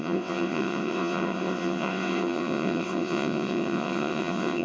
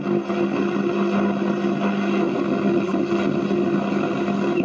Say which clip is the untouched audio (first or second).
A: second